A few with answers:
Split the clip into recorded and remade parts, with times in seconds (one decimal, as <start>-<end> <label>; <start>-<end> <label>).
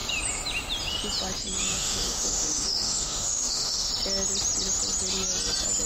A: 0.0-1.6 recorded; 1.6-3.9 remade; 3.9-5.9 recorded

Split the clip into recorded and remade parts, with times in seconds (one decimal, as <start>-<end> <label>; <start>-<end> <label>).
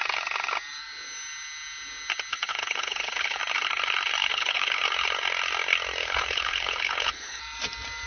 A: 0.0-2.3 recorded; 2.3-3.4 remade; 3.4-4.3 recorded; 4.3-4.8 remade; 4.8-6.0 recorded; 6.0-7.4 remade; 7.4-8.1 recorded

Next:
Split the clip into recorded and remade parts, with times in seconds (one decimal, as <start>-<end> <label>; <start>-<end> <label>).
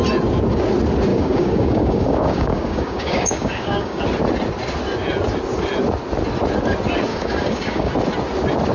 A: 0.0-1.1 recorded; 1.1-4.0 remade; 4.0-7.1 recorded; 7.1-7.9 remade; 7.9-8.7 recorded